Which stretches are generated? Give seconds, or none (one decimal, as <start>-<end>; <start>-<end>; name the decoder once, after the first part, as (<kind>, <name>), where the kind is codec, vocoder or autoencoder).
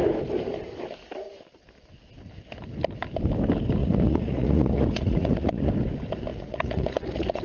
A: 3.8-5.7 (vocoder, Vocos); 6.3-7.4